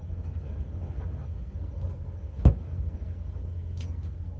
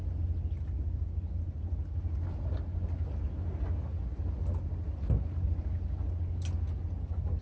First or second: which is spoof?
first